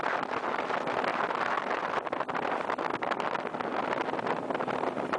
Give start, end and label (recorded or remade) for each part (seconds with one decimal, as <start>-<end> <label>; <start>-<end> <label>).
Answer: 0.0-5.2 recorded